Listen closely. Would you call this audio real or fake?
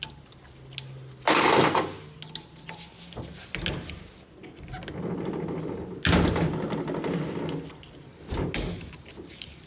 real